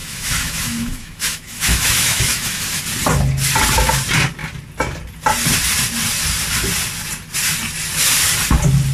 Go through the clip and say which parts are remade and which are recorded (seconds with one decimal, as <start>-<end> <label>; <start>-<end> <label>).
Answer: 0.0-2.8 remade; 2.8-8.9 recorded